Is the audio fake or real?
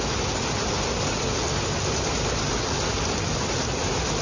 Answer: real